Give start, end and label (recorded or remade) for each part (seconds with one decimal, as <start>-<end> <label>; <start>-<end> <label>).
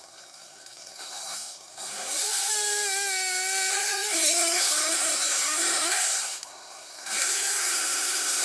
0.0-2.5 remade; 2.5-3.7 recorded; 3.7-8.4 remade